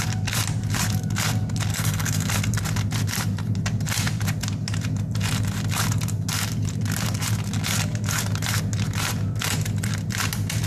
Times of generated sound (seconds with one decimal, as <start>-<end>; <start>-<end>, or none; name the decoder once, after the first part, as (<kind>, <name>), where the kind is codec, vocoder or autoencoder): 1.7-2.3 (codec, SNAC)